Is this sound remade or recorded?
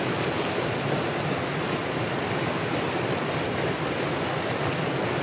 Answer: recorded